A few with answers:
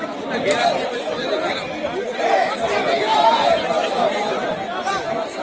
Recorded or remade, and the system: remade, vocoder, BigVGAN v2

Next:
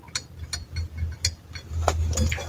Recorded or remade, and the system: recorded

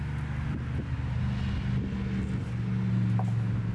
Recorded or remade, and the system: recorded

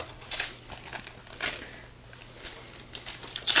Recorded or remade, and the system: recorded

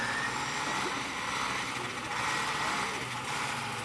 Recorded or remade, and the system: recorded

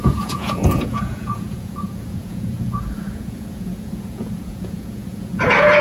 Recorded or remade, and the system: remade, vocoder, Vocos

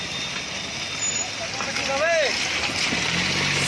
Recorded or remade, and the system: recorded